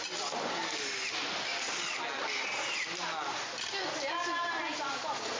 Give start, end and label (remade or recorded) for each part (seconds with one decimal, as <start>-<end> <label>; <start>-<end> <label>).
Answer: 0.0-5.4 recorded